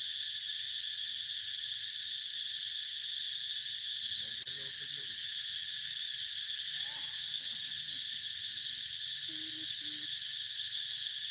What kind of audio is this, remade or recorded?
recorded